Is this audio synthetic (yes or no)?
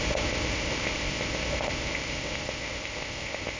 yes